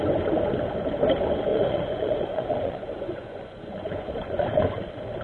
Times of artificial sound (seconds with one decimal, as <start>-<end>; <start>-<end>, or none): 1.5-4.6